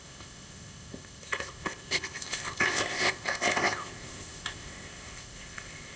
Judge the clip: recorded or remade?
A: remade